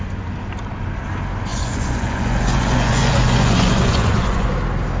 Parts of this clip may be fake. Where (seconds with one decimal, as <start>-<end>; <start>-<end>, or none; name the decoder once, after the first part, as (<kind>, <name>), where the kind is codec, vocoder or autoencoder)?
1.5-4.5 (vocoder, Vocos)